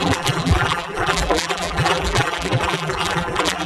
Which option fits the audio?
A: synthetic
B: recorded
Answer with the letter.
A